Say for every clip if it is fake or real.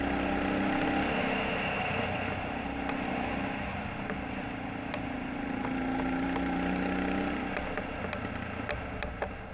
real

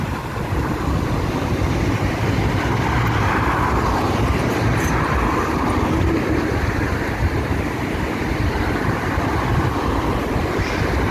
fake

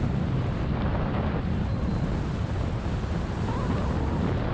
real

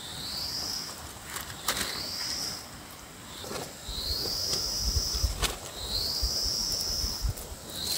real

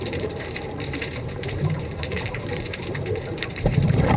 fake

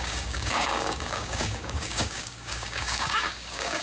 fake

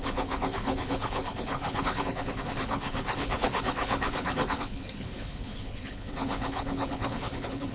fake